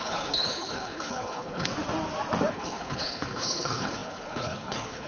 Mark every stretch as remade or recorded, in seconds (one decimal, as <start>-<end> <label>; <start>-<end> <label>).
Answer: 0.0-1.7 remade; 1.7-2.5 recorded; 2.5-5.1 remade